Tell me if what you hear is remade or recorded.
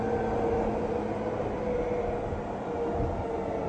recorded